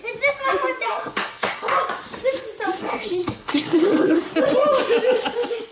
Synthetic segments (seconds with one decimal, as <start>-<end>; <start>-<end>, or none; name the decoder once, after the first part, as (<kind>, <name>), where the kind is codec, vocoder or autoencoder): 0.9-1.7 (codec, SNAC); 2.8-4.2